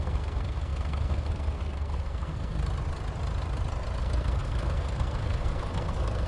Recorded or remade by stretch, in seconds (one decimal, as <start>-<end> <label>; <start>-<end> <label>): 0.0-2.6 remade; 2.6-4.0 recorded; 4.0-6.3 remade